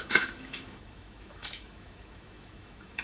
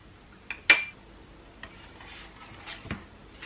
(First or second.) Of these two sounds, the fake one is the first